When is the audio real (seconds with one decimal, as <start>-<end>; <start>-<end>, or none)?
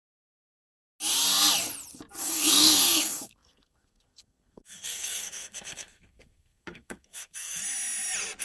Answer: 0.7-2.2; 7.6-8.4